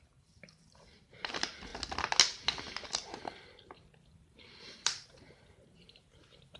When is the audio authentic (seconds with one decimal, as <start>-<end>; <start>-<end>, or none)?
1.7-4.1